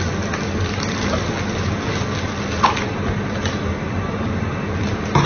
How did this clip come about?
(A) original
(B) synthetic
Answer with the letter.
A